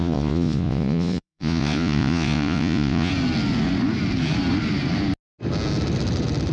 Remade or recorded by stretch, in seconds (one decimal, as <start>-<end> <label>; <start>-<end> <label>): 0.0-3.1 remade; 3.1-6.5 recorded